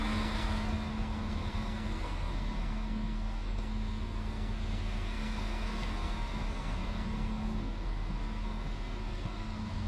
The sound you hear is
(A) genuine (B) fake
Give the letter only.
B